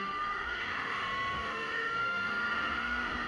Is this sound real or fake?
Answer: fake